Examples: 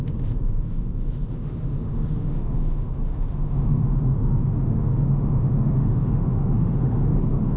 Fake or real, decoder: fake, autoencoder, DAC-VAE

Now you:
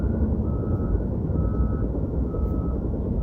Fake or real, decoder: fake, autoencoder, DAC-VAE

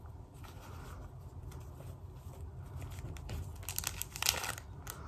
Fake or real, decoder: real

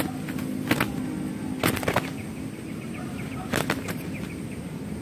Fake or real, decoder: real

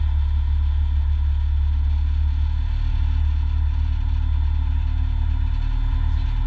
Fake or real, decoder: real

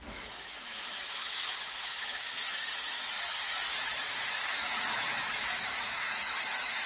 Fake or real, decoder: fake, autoencoder, DAC-VAE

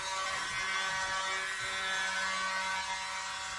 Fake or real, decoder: real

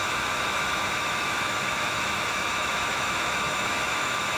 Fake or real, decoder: fake, autoencoder, DAC-VAE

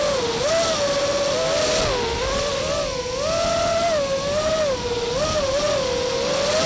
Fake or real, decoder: real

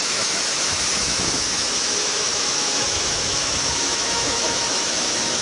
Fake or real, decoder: fake, autoencoder, DAC-VAE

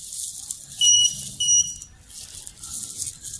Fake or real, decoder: real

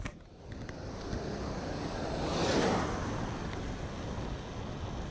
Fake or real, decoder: real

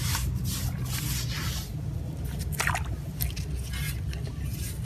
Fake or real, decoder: real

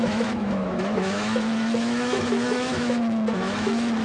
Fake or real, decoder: fake, autoencoder, DAC-VAE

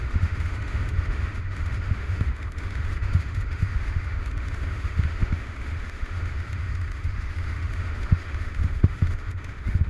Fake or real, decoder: fake, autoencoder, DAC-VAE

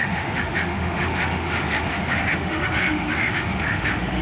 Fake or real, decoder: fake, autoencoder, DAC-VAE